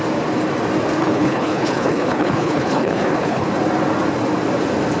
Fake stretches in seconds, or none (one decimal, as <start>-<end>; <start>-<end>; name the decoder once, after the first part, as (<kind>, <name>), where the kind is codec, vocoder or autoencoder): 1.0-3.5 (codec, HILCodec)